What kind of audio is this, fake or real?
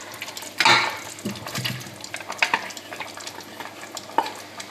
real